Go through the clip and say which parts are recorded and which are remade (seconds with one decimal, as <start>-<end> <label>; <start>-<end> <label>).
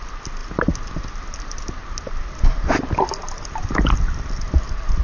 0.0-5.0 recorded